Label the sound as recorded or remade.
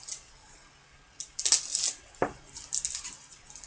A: recorded